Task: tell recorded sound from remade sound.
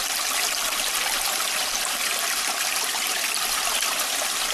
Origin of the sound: recorded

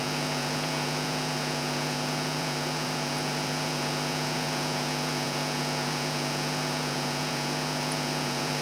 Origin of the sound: remade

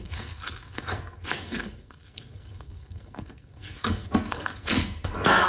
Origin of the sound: remade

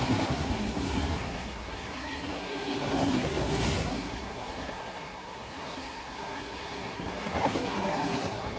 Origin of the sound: remade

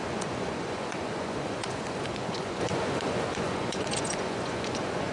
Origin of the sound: remade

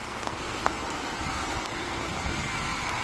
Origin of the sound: remade